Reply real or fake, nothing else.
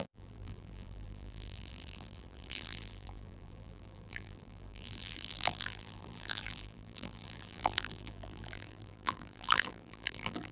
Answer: fake